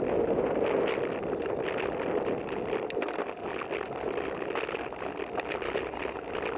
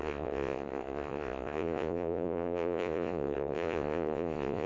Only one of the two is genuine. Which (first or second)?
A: first